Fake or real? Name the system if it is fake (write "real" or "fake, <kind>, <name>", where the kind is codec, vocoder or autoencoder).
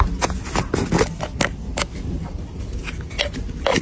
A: real